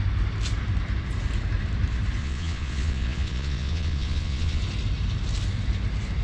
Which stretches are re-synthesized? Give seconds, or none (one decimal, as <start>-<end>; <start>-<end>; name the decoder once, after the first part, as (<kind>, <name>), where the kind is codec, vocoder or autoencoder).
2.2-4.6 (vocoder, Vocos)